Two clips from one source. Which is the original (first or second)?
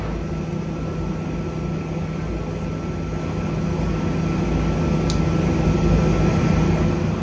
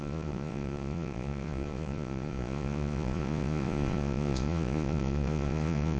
first